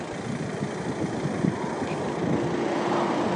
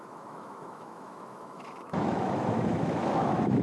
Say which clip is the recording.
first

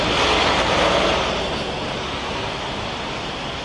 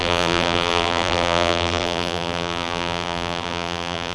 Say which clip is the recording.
first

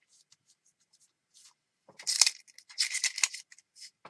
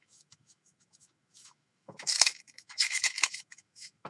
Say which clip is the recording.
first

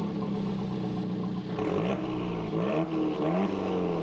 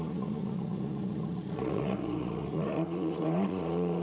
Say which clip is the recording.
first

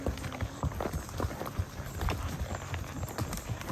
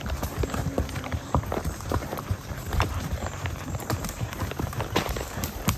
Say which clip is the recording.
first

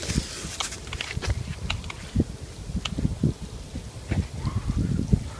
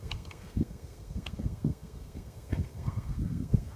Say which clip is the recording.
first